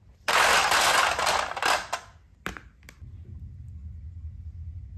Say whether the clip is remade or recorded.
recorded